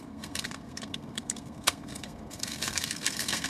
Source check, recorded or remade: remade